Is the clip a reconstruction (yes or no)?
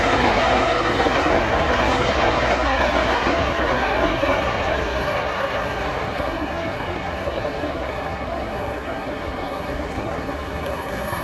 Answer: yes